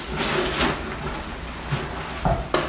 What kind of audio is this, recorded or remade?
recorded